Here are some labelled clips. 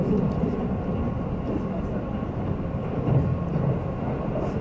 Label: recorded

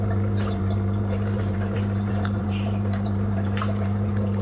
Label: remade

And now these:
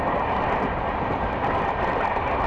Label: recorded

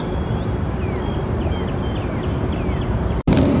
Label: recorded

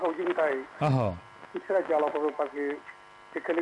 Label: recorded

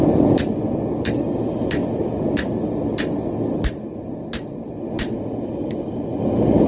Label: recorded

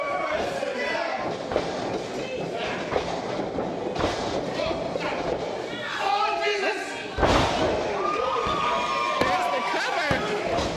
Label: recorded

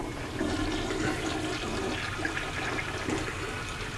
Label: recorded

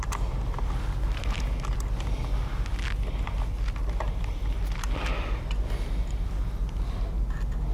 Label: recorded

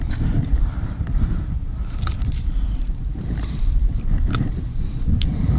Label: remade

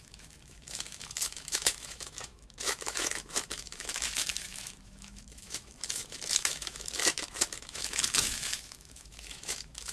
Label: remade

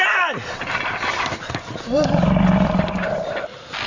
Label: recorded